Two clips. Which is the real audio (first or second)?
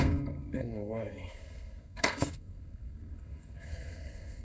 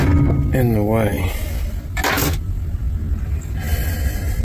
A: second